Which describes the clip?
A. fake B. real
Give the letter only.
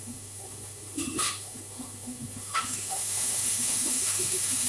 A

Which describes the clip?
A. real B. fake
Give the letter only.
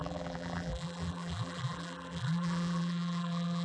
B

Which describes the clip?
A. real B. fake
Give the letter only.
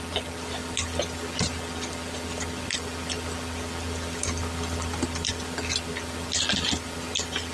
A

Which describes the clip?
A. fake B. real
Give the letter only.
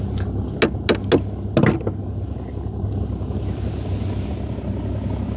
B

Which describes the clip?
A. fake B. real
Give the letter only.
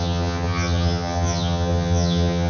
A